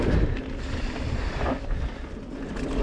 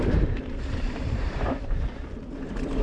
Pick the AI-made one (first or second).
second